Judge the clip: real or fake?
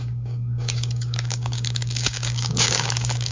fake